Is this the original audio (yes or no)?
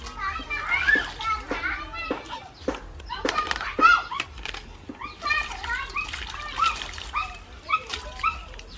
yes